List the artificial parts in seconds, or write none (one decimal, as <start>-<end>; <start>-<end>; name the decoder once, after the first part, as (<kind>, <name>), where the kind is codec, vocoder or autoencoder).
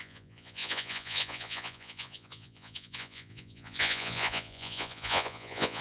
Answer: 0.0-5.8 (vocoder, Vocos)